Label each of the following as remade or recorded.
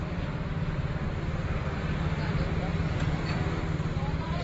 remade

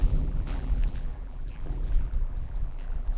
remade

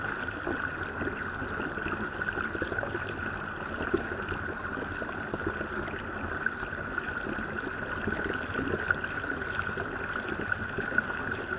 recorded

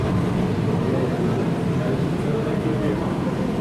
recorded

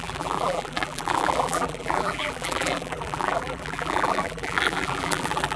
remade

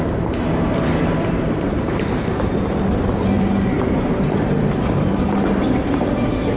remade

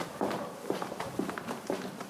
recorded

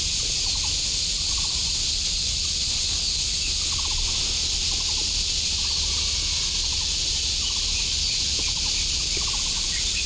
recorded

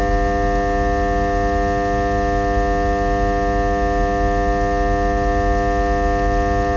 recorded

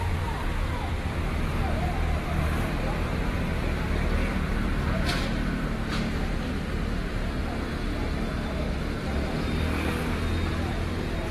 recorded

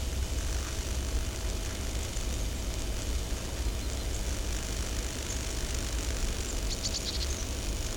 recorded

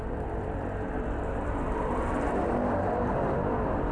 remade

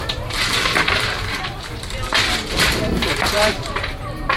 remade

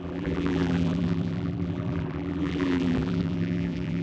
remade